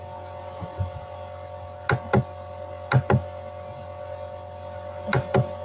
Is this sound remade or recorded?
recorded